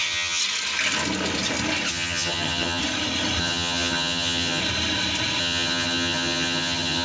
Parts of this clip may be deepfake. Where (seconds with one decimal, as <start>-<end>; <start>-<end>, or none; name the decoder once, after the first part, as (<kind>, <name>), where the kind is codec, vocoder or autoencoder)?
0.0-0.4 (vocoder, HiFi-GAN); 1.9-2.8; 3.4-4.6; 5.4-7.0